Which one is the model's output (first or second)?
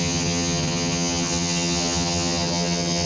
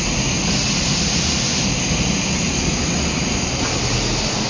first